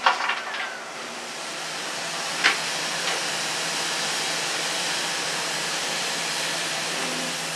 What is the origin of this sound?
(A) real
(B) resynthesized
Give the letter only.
B